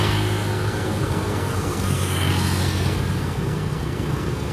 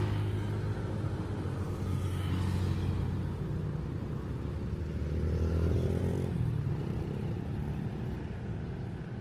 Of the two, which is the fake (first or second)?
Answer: first